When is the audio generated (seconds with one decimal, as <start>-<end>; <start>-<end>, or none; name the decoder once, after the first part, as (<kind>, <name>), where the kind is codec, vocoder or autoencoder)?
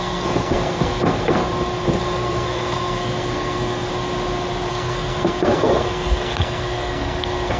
0.0-1.4 (codec, SNAC); 2.0-3.9; 4.7-7.6